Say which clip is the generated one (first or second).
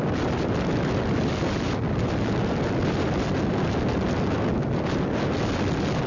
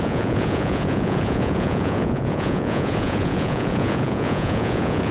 second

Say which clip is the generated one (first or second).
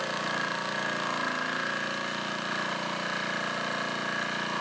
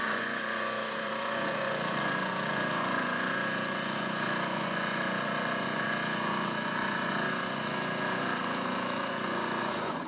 second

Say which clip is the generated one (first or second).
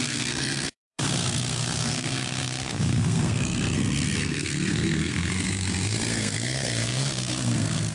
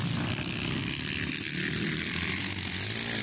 first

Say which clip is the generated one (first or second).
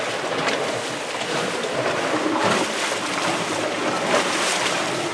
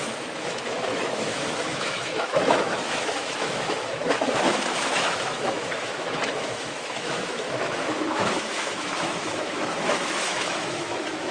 second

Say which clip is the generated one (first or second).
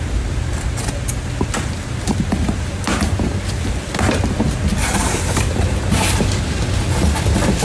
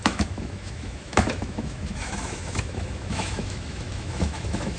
second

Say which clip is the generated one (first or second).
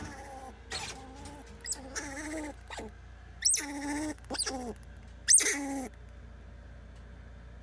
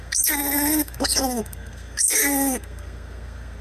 second